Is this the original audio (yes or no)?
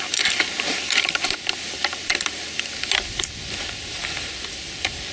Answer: no